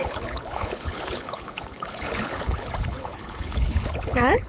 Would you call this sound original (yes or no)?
no